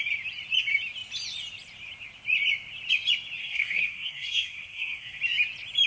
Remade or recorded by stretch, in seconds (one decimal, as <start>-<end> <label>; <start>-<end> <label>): 0.0-3.4 recorded; 3.4-5.2 remade; 5.2-5.9 recorded